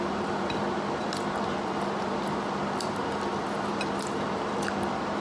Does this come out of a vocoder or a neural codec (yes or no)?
yes